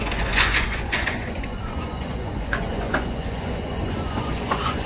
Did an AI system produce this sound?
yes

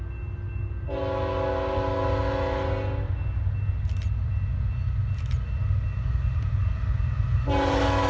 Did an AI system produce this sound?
no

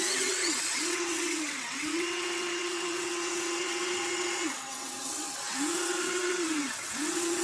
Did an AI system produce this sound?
yes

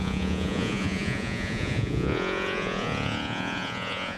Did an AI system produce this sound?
yes